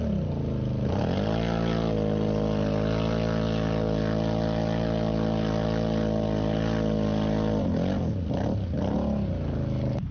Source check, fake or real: real